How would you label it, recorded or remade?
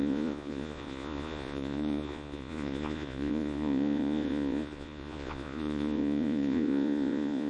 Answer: remade